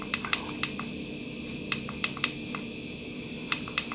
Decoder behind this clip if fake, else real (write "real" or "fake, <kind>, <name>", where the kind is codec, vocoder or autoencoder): real